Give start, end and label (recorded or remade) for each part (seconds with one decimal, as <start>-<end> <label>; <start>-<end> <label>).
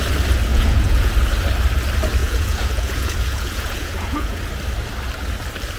0.0-0.5 recorded; 0.5-1.1 remade; 1.1-2.2 recorded; 2.2-4.4 remade; 4.4-5.8 recorded